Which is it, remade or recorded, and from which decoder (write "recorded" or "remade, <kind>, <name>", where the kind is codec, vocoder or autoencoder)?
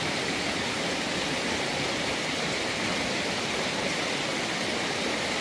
recorded